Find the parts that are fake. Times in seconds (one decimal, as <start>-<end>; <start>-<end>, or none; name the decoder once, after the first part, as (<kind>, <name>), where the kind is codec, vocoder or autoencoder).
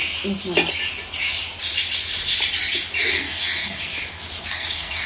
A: 3.1-3.9 (codec, SNAC); 4.4-5.1